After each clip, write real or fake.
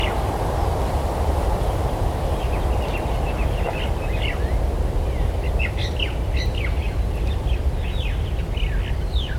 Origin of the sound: real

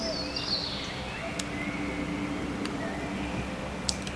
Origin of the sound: real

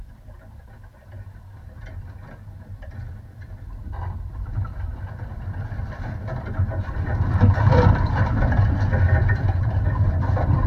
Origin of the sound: fake